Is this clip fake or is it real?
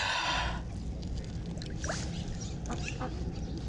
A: real